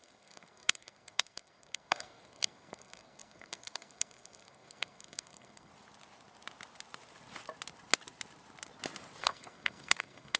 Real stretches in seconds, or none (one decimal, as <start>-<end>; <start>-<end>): 5.7-9.2